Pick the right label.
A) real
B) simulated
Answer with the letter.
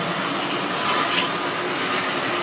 A